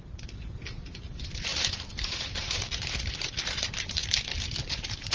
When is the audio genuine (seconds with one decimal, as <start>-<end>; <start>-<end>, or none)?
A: 4.0-5.1